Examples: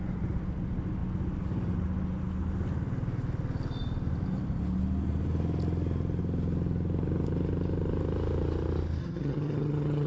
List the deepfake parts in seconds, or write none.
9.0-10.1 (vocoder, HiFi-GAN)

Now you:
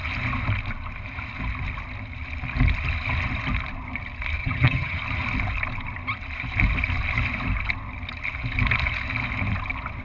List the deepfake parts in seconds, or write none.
4.4-5.0 (vocoder, HiFi-GAN)

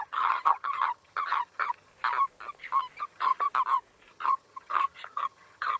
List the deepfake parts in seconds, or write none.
0.0-1.9 (vocoder, HiFi-GAN); 3.0-3.5; 4.1-5.8

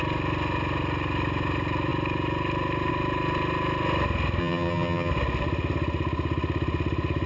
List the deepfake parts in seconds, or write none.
4.4-5.1 (vocoder, HiFi-GAN)